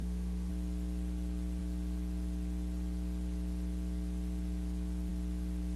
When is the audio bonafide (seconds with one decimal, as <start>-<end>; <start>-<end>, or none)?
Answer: 0.5-5.8